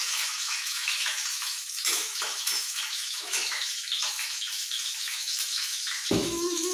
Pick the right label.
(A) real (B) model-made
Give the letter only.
B